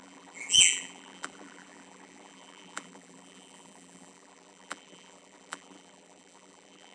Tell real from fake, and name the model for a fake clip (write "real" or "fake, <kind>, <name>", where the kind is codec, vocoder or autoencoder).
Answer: fake, vocoder, BigVGAN v2